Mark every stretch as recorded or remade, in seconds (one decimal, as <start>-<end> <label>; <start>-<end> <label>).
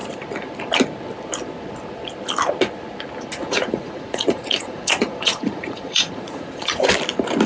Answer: 0.0-3.4 recorded; 3.4-6.9 remade; 6.9-7.5 recorded